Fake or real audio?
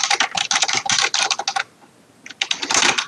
real